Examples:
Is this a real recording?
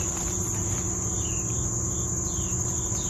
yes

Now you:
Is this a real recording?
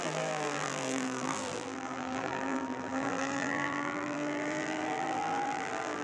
no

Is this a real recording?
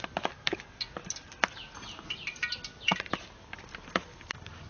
no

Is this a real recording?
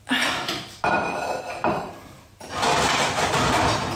no